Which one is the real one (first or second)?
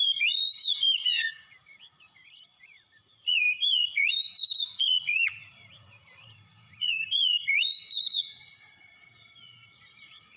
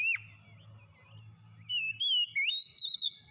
second